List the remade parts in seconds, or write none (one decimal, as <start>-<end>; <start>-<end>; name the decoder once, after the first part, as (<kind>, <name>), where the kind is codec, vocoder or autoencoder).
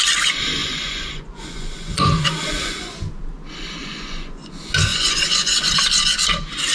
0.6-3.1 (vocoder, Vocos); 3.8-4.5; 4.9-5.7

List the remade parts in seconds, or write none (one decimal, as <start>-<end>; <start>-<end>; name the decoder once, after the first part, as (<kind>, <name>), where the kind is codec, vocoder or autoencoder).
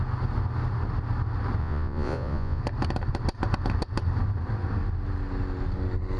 1.6-2.6 (vocoder, Vocos)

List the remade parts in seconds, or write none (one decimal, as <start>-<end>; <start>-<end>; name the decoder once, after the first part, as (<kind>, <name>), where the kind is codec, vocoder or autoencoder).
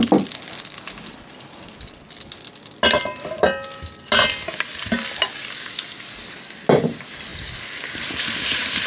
none